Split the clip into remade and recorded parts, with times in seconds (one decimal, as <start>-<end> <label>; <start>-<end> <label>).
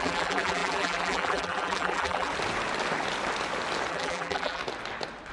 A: 0.0-2.3 remade; 2.3-3.9 recorded; 3.9-4.6 remade; 4.6-5.3 recorded